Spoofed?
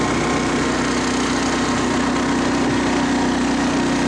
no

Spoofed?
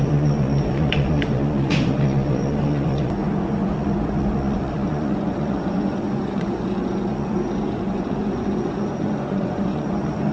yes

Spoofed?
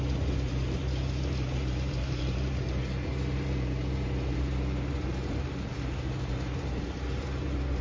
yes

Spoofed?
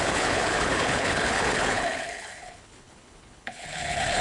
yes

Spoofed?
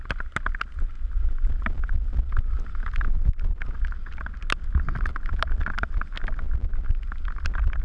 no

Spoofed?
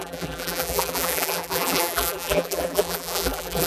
yes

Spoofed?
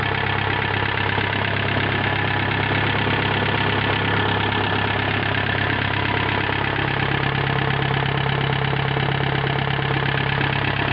no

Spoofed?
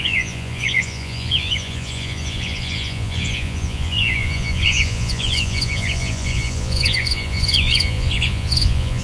yes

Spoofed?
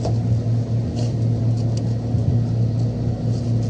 no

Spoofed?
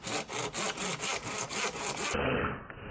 no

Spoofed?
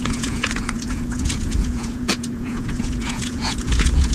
yes